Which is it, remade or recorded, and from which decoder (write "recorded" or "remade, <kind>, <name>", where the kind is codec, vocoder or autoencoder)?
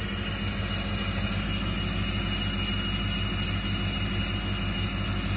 recorded